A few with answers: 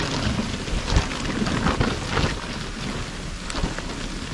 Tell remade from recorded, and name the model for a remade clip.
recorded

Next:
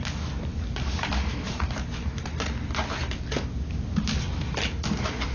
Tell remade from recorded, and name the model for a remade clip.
recorded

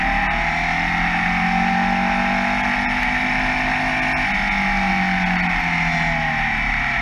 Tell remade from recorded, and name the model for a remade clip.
recorded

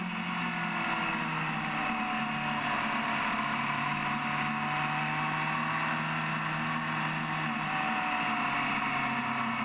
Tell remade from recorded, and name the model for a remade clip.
recorded